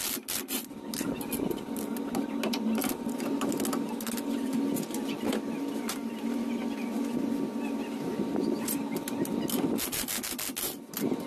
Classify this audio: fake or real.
real